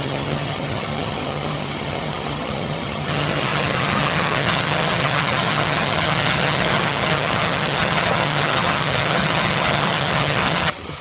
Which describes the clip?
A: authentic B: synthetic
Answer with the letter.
B